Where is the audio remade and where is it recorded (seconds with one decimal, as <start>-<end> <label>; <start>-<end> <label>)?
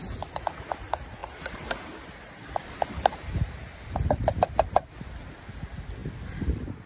0.0-6.9 recorded